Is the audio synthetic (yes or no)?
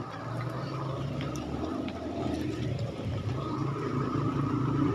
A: yes